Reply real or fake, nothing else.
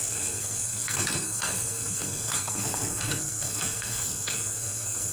fake